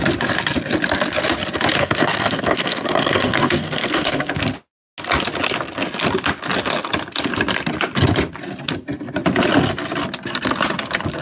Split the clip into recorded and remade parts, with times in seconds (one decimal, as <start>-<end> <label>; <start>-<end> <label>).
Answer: 0.0-1.8 recorded; 1.8-4.4 remade; 4.4-11.2 recorded